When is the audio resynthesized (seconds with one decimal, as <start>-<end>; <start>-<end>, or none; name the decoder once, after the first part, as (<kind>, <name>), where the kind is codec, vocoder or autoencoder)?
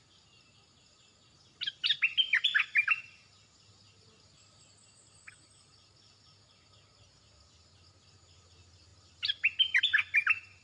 none